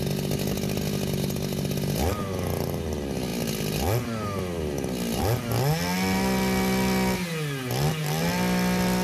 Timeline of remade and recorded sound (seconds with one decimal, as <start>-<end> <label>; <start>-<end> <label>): 0.0-9.0 recorded